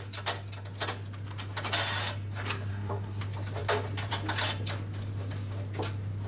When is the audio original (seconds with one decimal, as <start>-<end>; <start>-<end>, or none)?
0.0-2.7; 3.2-6.3